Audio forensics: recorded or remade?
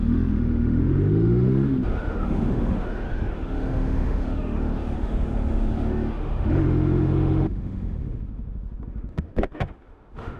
remade